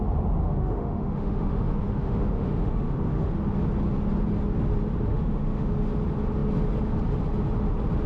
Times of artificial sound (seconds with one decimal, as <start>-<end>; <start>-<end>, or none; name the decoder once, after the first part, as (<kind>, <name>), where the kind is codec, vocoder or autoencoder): 0.4-3.3 (autoencoder, DAC-VAE); 5.1-5.7